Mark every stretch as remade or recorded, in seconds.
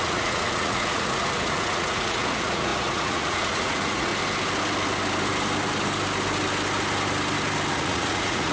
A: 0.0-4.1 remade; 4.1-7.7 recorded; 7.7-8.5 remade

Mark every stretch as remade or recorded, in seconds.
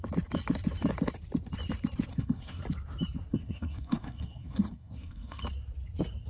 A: 0.0-2.1 recorded; 2.1-2.6 remade; 2.6-3.3 recorded; 3.3-5.4 remade; 5.4-6.3 recorded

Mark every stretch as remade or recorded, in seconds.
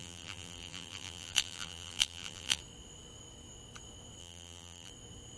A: 0.0-2.6 remade; 2.6-4.2 recorded; 4.2-4.9 remade; 4.9-5.4 recorded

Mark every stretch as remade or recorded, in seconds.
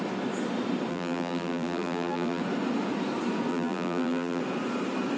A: 0.0-0.9 recorded; 0.9-2.4 remade; 2.4-3.5 recorded; 3.5-4.4 remade; 4.4-5.2 recorded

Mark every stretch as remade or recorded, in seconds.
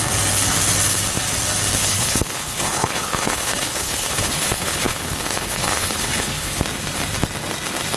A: 0.0-1.8 recorded; 1.8-6.6 remade; 6.6-8.0 recorded